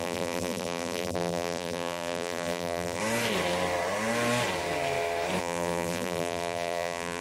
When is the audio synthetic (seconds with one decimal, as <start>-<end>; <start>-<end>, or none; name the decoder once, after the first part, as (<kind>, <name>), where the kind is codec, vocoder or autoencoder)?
0.0-3.0 (vocoder, BigVGAN v2); 5.4-7.2